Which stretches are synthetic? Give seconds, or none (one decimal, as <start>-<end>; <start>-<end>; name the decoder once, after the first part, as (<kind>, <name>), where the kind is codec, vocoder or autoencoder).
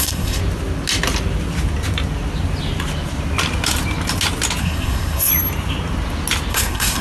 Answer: 0.0-0.4 (codec, SNAC); 4.6-5.3; 6.5-7.0